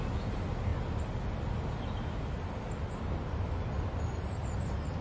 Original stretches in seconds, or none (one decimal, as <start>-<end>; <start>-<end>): 0.0-5.0

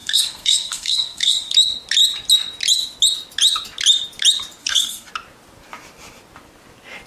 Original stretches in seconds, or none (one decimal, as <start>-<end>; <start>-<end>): 1.5-4.6; 5.1-7.1

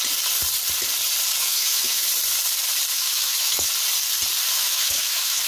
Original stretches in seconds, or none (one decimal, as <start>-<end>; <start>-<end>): 0.0-1.4; 2.0-2.9; 3.7-4.5

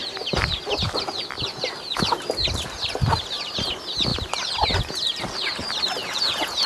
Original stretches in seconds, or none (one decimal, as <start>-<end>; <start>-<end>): 0.0-6.0

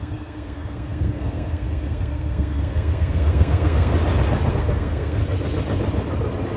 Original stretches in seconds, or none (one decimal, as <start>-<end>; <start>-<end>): 3.9-4.5; 5.2-6.6

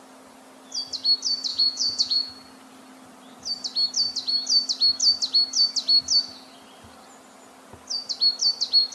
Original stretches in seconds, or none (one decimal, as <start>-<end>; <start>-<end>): 0.0-1.5; 2.3-8.9